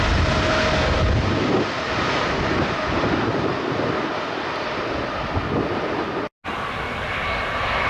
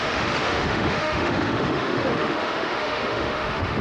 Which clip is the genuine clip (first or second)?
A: first